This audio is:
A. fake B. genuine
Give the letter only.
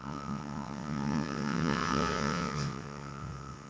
A